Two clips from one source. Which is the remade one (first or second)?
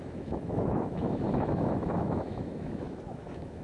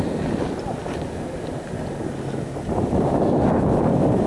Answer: first